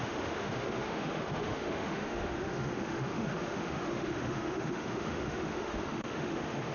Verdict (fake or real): fake